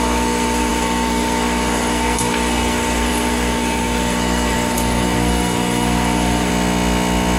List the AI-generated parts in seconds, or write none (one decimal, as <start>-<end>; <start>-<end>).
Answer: 0.0-6.5